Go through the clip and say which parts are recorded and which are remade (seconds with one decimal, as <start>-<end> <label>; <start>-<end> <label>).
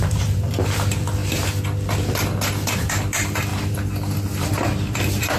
0.0-1.2 remade; 1.2-2.8 recorded; 2.8-3.5 remade; 3.5-4.4 recorded; 4.4-5.4 remade